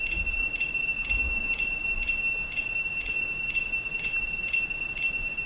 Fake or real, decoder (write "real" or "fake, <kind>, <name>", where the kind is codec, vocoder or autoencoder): fake, vocoder, Vocos